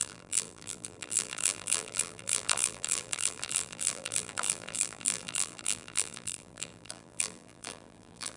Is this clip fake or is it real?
fake